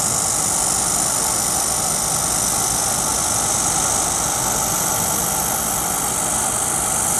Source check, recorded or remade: recorded